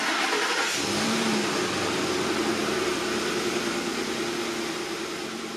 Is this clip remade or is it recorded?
remade